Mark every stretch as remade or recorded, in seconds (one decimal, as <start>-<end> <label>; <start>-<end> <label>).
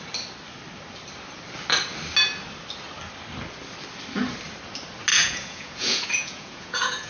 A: 0.0-5.1 recorded; 5.1-7.1 remade